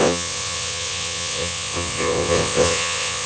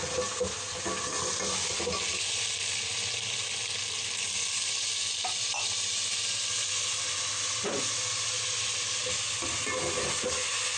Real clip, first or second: second